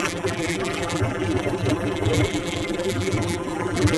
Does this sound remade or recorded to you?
remade